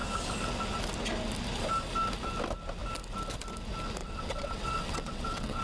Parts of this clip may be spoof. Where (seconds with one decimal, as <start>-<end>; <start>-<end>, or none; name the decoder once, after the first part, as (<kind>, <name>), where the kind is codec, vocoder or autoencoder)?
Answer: 4.0-5.6 (vocoder, WaveNeXt)